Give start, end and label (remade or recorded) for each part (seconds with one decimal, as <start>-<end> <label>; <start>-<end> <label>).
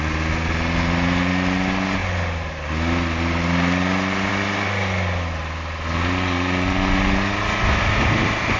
0.0-8.6 recorded